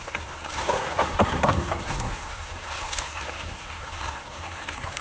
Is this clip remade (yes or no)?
yes